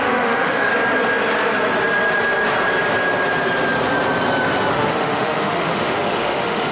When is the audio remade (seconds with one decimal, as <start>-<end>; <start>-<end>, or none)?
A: 0.0-0.7; 4.7-6.7